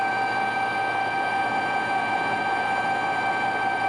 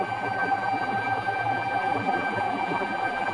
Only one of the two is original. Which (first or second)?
first